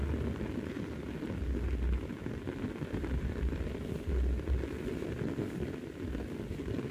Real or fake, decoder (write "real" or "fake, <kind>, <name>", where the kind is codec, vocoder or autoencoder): real